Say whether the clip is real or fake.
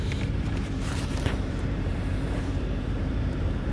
fake